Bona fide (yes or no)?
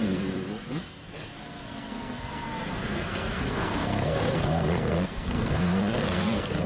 no